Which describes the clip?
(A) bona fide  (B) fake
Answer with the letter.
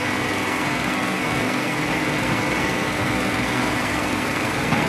B